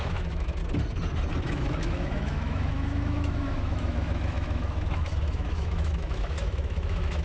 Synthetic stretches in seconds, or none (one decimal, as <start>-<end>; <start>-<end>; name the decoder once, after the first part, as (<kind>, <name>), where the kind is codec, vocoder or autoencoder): 0.0-0.6 (autoencoder, DAC-VAE); 1.4-7.2